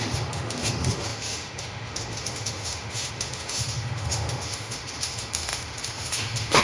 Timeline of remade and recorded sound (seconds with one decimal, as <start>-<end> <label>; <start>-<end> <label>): 0.0-6.6 remade